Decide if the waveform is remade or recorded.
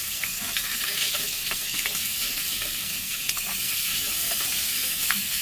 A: remade